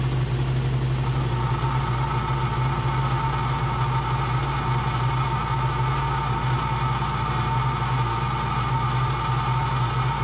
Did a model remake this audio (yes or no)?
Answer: no